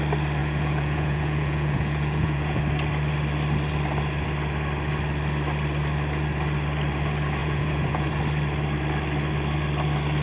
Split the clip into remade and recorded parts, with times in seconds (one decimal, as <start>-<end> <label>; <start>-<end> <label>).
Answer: 0.0-0.4 recorded; 0.4-2.6 remade; 2.6-7.4 recorded; 7.4-8.1 remade; 8.1-10.2 recorded